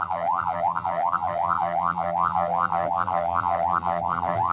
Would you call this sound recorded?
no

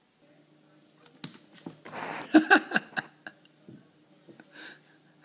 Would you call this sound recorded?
yes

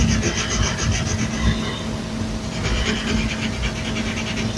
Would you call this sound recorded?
yes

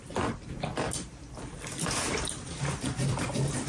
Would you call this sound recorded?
no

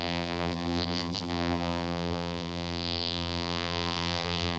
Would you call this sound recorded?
no